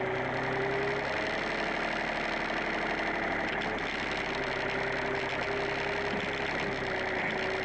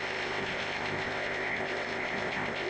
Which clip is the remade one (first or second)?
second